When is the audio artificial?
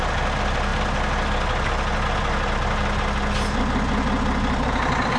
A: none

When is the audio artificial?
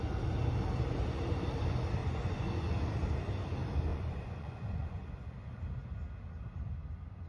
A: 2.0-2.7; 3.9-5.1